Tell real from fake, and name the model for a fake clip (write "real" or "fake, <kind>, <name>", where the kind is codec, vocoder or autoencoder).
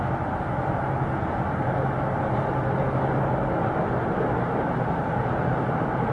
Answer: real